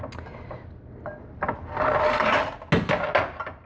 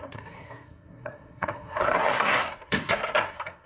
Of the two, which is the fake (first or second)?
second